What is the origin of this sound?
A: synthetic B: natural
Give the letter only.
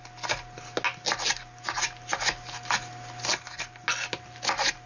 B